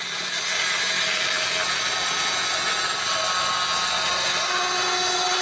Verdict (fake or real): real